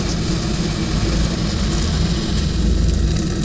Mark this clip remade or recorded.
recorded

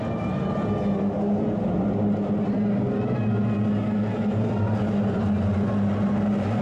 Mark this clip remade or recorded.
recorded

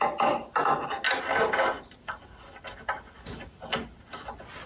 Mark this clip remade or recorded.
recorded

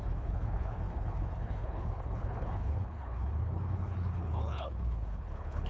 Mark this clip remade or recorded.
remade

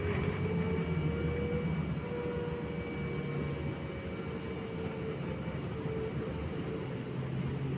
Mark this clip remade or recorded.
recorded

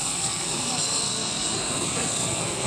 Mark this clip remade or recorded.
remade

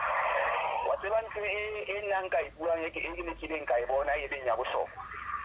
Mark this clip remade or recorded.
recorded